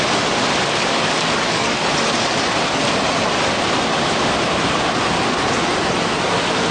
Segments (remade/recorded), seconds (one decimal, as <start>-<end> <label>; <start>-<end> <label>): 0.0-0.8 recorded; 0.8-1.8 remade; 1.8-6.7 recorded